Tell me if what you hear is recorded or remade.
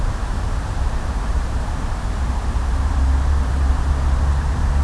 remade